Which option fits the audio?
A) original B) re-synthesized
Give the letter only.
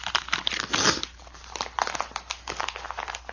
B